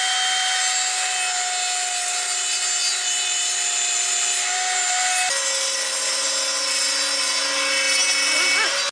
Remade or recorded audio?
recorded